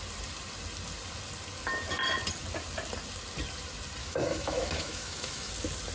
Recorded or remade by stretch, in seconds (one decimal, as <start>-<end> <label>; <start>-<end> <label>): 0.0-4.0 recorded; 4.0-5.5 remade; 5.5-5.9 recorded